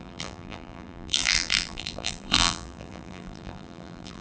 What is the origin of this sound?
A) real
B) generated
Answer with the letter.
B